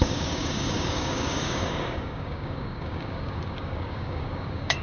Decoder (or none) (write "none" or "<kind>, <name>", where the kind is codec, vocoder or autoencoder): codec, DAC